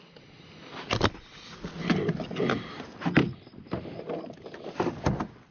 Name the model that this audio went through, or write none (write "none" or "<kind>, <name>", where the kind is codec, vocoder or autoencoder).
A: none